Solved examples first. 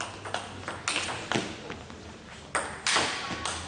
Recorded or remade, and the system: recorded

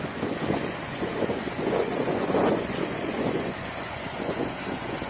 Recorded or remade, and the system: remade, vocoder, Vocos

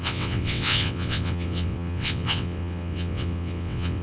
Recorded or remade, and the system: remade, vocoder, WaveNeXt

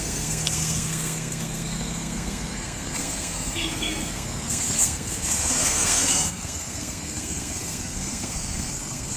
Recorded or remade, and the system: remade, codec, SNAC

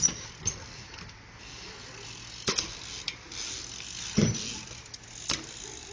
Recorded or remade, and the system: recorded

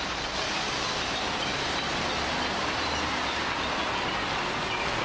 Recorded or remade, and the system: recorded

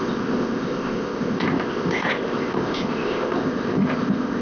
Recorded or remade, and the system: remade, codec, ZipCodec